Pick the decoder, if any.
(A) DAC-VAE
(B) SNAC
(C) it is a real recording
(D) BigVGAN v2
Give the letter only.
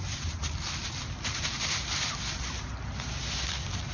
C